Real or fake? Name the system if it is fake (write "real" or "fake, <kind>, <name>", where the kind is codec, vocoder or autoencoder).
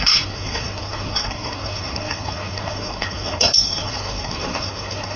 fake, codec, SNAC